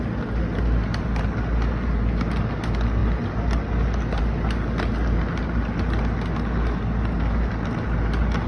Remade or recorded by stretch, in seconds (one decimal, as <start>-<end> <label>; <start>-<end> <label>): 0.0-8.5 recorded